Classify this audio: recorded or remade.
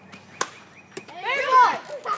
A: recorded